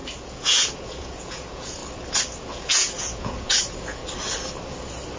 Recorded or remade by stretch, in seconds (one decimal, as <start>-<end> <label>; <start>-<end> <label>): 0.0-1.8 remade; 1.8-2.5 recorded; 2.5-4.0 remade; 4.0-5.2 recorded